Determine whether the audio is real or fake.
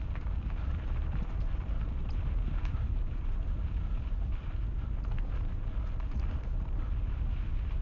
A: real